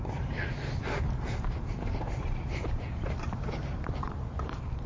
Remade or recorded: remade